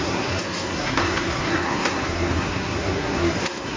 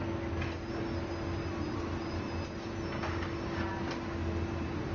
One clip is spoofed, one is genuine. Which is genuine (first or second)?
second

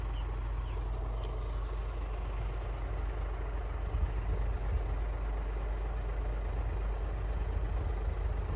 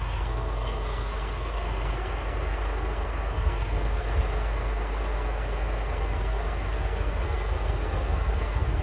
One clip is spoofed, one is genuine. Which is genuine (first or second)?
first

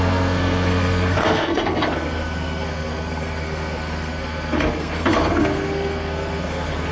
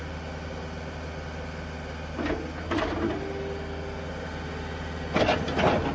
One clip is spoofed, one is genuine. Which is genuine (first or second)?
second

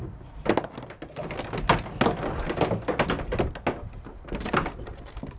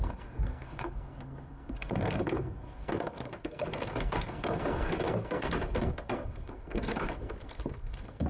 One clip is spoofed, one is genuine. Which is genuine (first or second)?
first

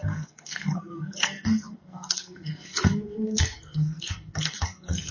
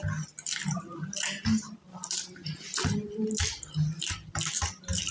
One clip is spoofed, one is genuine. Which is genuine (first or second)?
second